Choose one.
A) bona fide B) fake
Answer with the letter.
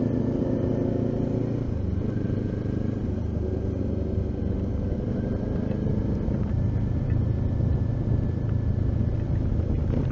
A